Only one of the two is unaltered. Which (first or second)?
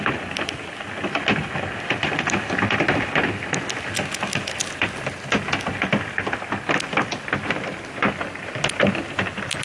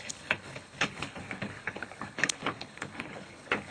first